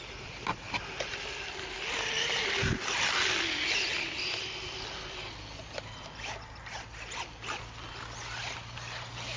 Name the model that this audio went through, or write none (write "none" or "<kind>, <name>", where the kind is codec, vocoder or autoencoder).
none